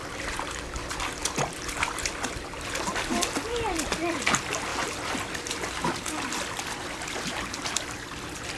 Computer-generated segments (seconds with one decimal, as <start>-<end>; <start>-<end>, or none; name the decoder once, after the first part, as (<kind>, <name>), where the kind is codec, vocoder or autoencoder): none